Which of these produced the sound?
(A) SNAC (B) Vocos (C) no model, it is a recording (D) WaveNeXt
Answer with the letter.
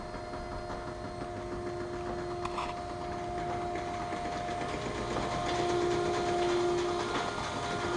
C